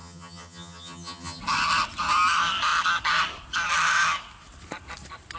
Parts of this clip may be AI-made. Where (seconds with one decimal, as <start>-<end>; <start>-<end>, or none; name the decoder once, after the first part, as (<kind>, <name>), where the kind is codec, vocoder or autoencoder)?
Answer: 0.0-1.4 (vocoder, HiFi-GAN)